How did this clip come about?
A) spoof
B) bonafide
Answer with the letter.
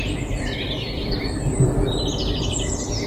A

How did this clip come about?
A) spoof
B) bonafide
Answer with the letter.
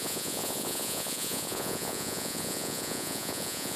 A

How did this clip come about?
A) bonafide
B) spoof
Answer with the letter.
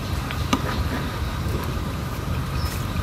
B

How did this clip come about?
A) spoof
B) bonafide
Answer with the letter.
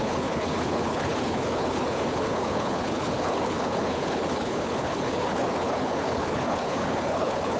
A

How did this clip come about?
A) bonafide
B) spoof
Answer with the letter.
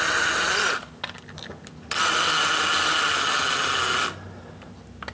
A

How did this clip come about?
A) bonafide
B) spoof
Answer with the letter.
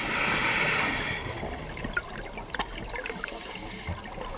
A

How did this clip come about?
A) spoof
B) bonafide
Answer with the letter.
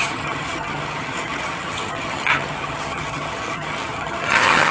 A